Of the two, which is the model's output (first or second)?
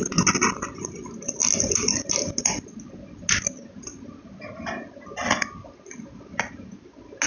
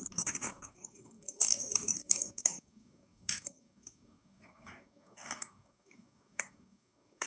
second